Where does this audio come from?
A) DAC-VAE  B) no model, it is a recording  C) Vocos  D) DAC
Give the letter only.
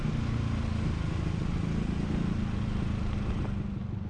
B